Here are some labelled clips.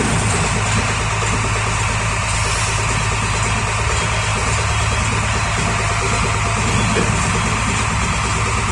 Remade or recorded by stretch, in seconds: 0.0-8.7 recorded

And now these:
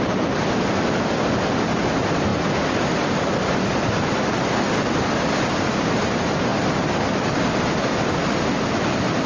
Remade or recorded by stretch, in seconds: 0.0-9.3 recorded